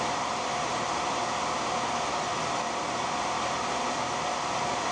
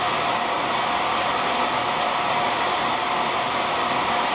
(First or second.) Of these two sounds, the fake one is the first